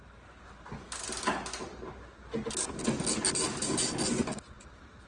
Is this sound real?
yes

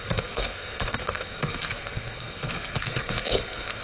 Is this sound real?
no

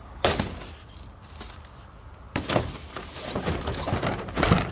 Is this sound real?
no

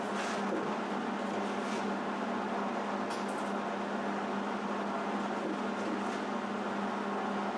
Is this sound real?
yes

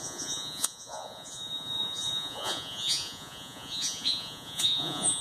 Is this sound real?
no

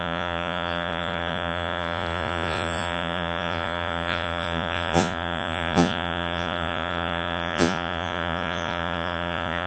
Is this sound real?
no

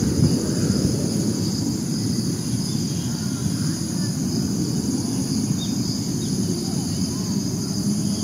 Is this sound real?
yes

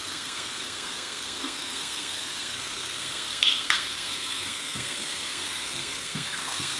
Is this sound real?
no